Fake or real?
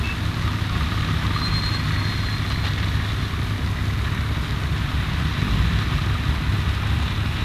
real